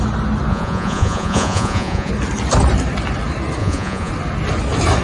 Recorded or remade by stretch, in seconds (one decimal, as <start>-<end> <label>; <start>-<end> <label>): 0.0-0.5 recorded; 0.5-2.1 remade; 2.1-3.6 recorded; 3.6-4.1 remade; 4.1-5.0 recorded